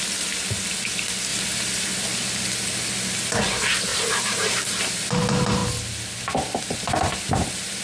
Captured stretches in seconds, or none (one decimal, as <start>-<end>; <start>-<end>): 0.0-3.9; 5.0-7.8